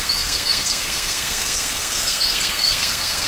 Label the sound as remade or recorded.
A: remade